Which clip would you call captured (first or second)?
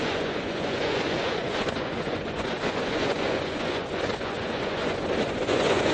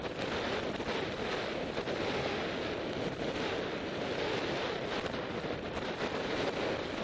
second